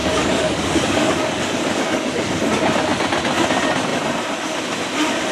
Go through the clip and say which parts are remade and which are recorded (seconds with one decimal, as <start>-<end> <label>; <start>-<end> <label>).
0.0-2.5 remade; 2.5-5.3 recorded